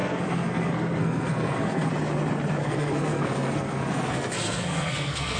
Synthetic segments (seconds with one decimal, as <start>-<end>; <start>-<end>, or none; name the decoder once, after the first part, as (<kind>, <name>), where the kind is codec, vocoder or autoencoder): 0.0-1.9 (codec, SNAC); 2.6-5.4